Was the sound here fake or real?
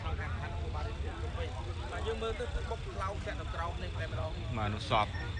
real